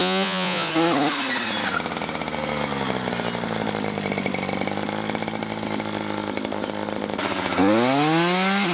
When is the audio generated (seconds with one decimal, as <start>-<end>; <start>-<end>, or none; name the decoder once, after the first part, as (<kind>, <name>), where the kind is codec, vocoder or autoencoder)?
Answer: 0.0-0.7 (vocoder, Vocos)